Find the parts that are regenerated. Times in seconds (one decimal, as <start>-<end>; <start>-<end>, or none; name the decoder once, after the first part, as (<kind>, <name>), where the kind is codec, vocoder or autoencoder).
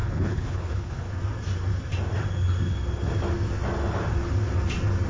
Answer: 0.0-1.1 (codec, HILCodec)